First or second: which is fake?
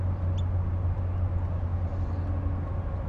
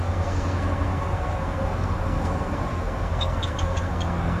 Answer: second